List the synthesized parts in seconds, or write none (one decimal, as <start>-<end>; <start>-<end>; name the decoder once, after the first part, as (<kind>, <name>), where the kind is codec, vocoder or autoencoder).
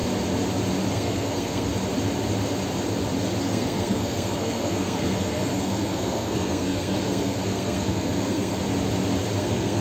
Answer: 0.9-1.7 (codec, SNAC); 3.4-8.6; 9.4-9.8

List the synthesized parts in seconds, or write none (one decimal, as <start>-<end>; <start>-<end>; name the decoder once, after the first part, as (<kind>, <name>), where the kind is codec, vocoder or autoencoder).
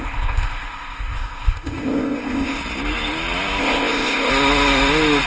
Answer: 0.0-2.6 (codec, ZipCodec); 3.6-4.3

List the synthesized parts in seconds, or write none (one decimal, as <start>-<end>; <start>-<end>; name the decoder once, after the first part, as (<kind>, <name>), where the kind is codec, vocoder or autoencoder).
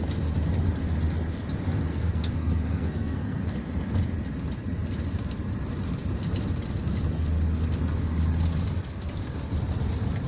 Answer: 1.9-3.5 (codec, SNAC)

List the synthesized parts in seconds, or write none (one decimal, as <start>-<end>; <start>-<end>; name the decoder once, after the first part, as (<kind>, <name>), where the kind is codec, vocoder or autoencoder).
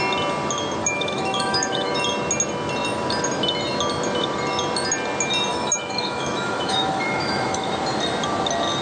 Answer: 0.8-1.9 (autoencoder, DAC-VAE); 5.5-7.7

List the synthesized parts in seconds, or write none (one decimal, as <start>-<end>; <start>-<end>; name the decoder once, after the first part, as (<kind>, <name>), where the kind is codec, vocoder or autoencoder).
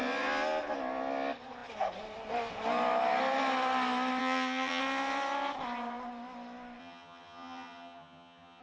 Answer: 4.2-4.8 (vocoder, HiFi-GAN); 6.8-8.6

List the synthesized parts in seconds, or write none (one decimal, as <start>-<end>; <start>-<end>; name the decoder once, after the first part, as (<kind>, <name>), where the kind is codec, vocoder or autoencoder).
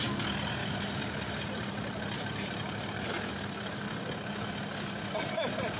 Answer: 0.6-4.1 (vocoder, BigVGAN v2)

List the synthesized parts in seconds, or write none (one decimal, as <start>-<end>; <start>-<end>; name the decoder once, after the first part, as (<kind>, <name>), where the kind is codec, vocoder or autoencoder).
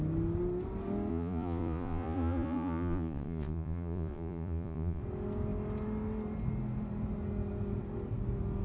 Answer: 1.1-5.0 (vocoder, Vocos)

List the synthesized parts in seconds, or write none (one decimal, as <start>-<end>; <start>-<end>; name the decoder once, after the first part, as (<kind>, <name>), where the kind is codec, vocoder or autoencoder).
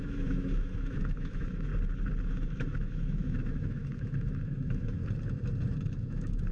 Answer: 0.0-1.7 (autoencoder, DAC-VAE); 2.3-5.0; 5.8-6.5